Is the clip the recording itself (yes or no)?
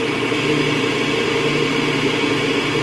yes